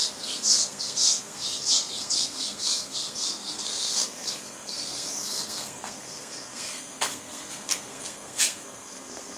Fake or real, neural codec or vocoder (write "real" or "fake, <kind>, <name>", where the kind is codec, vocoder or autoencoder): fake, codec, SNAC